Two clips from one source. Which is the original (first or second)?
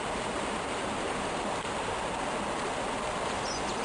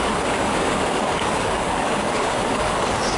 first